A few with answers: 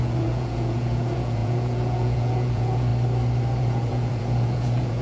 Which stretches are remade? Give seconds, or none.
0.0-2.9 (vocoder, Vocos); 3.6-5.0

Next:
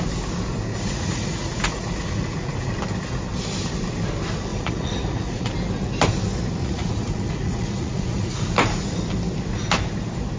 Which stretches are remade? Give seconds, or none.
0.7-2.7 (vocoder, Vocos); 4.5-5.5; 6.6-8.5